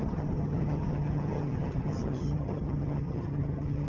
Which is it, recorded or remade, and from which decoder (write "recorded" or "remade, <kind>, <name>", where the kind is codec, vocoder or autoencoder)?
remade, vocoder, HiFi-GAN